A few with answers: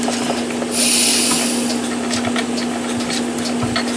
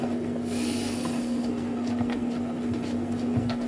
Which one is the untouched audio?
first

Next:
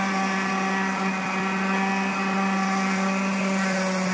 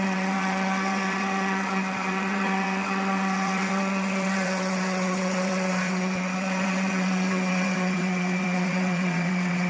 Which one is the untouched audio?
first